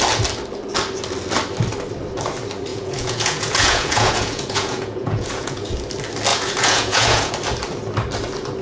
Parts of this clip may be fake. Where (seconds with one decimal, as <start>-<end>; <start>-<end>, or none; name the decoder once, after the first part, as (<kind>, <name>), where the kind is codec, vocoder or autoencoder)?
2.7-5.7 (vocoder, Vocos); 6.3-7.3